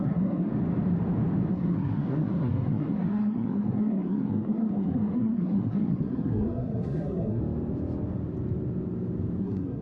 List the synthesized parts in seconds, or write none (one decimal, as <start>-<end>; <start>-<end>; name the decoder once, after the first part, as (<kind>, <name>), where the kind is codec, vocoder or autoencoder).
0.0-0.5 (codec, SNAC); 1.5-7.4; 9.4-9.8